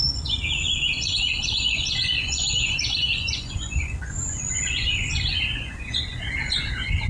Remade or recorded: remade